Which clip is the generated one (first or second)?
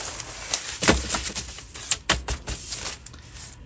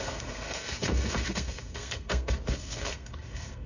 second